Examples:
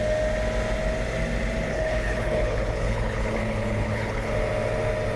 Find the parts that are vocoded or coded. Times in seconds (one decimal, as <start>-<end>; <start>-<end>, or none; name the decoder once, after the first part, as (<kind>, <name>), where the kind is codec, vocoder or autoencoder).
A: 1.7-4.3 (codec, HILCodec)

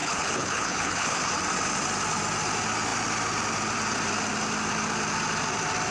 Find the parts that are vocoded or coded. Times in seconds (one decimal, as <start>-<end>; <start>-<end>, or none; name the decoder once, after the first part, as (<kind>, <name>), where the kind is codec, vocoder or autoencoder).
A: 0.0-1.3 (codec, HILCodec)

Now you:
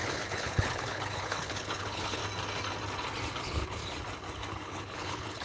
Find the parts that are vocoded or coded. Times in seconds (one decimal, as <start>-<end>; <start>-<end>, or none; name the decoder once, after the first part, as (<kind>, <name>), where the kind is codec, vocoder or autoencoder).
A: 0.0-2.2 (codec, HILCodec); 3.4-3.8; 4.5-5.4

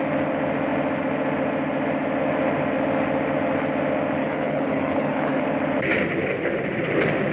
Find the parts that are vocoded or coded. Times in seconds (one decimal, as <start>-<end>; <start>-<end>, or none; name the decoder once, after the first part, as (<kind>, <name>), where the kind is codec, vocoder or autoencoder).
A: 4.2-5.4 (codec, HILCodec)

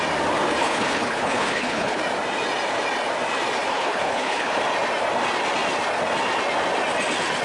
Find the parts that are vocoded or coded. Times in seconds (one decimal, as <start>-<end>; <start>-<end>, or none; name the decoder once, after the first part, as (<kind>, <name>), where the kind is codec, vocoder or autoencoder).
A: 0.6-2.0 (codec, HILCodec); 3.7-4.6

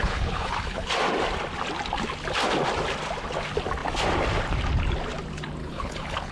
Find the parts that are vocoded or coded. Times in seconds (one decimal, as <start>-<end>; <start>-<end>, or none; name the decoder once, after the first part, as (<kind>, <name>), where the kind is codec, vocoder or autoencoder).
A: 0.0-0.9 (codec, HILCodec); 5.6-6.3

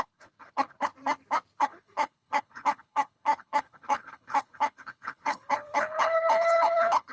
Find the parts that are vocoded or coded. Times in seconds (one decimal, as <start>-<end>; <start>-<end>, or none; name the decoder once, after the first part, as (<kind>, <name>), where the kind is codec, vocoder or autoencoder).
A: 0.0-0.9 (codec, HILCodec); 1.6-7.1